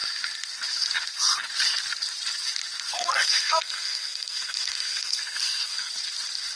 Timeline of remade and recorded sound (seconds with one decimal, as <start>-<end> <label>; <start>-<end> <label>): 0.0-2.9 recorded; 2.9-5.9 remade; 5.9-6.6 recorded